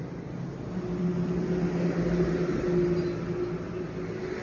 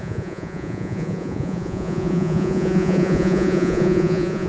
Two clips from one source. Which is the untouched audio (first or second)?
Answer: first